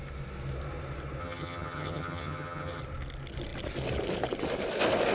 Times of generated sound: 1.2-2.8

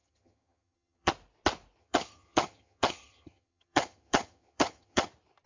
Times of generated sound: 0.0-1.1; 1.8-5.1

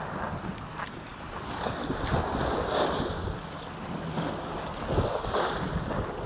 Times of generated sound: none

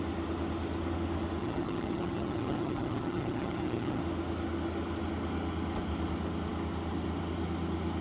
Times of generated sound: 1.4-4.0

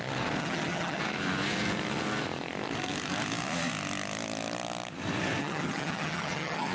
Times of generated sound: 0.4-1.0; 5.4-6.7

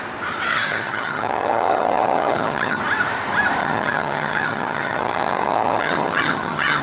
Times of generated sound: 0.5-2.8; 3.6-6.8

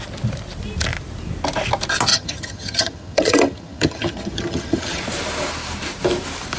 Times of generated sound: 2.1-5.0

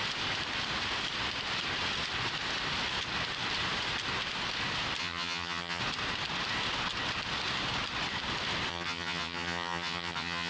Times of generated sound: 5.0-5.8; 8.7-10.5